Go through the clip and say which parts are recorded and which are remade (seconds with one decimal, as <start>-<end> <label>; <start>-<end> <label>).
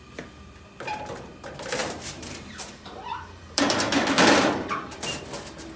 0.0-1.8 recorded; 1.8-5.2 remade; 5.2-5.8 recorded